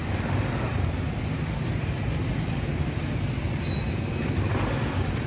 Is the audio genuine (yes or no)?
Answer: yes